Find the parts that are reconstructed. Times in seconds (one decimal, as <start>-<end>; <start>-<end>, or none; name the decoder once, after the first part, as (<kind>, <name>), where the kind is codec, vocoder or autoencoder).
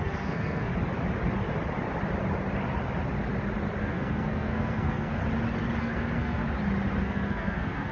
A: 0.0-0.7 (codec, SNAC); 3.8-5.2; 5.8-6.4; 7.0-7.9